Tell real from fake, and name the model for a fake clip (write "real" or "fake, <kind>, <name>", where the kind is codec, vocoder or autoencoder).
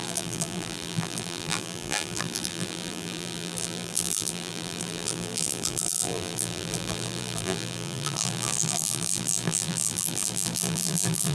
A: fake, vocoder, BigVGAN v2